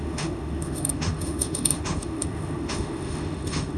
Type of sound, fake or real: fake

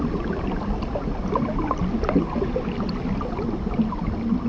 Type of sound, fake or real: real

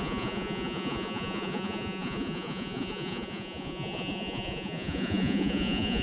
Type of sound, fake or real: fake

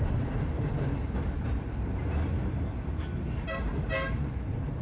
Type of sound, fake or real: fake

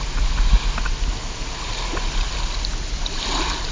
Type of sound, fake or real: real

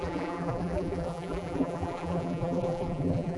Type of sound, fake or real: fake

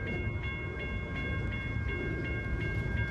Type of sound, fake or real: real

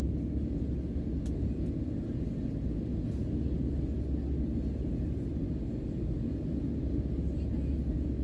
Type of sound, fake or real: real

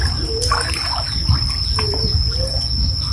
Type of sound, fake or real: real